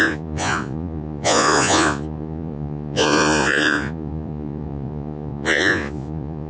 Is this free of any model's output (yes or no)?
no